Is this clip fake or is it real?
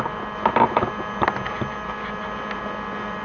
real